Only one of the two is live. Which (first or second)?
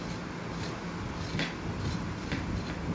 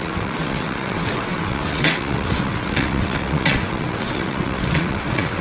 first